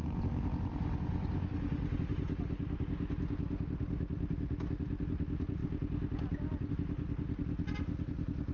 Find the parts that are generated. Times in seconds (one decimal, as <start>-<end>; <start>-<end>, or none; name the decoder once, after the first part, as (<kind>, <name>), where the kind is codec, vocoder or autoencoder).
none